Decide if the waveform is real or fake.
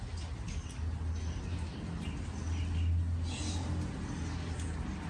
real